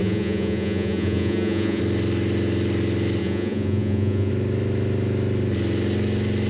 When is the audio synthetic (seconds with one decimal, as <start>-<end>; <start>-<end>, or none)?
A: 0.0-1.8; 3.2-4.3